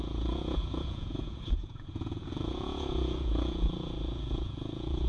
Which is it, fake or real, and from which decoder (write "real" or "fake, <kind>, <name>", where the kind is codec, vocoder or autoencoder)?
fake, vocoder, Vocos